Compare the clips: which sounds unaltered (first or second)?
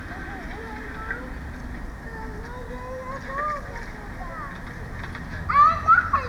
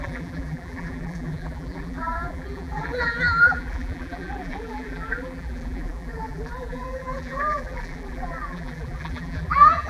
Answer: first